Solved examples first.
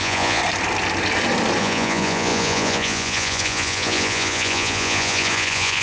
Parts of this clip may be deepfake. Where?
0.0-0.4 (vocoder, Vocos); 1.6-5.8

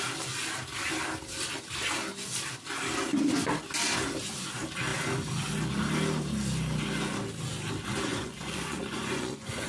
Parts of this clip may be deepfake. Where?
8.1-9.7 (vocoder, Vocos)

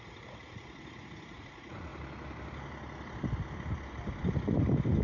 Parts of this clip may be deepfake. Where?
0.0-1.9 (vocoder, Vocos)

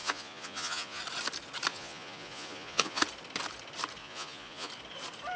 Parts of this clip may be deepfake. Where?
0.0-1.0 (vocoder, Vocos); 1.7-3.0; 4.0-4.7

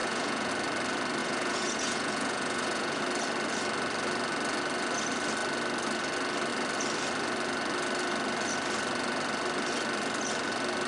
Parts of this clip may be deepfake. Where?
0.0-0.5 (vocoder, Vocos); 1.2-3.0

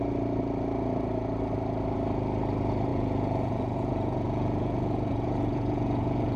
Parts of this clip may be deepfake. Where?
2.9-6.4 (vocoder, Vocos)